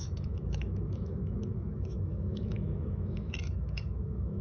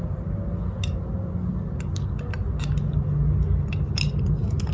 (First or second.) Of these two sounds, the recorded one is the second